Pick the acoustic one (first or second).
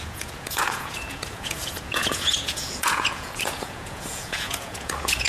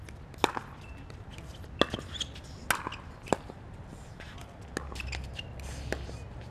second